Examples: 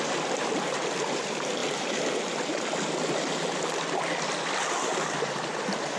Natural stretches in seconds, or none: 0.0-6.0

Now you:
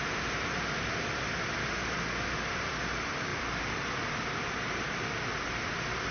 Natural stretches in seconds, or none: 0.0-6.1

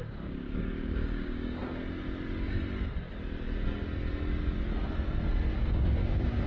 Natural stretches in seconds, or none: 1.6-5.5

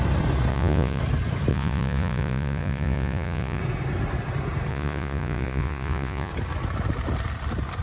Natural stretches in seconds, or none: 0.0-0.5; 1.0-1.5; 3.6-4.7; 6.3-7.8

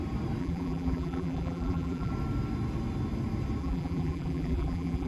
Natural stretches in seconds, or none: 0.0-0.4; 2.1-3.6

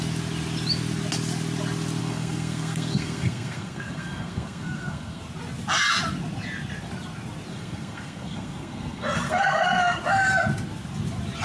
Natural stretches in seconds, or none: 0.0-2.0; 5.2-7.5; 10.0-11.4

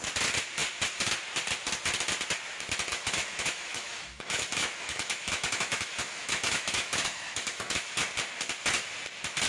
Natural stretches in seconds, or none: 0.0-2.9; 8.0-9.5

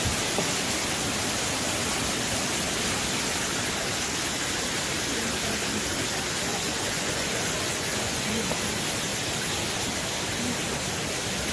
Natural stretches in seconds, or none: 0.0-6.5; 8.5-11.5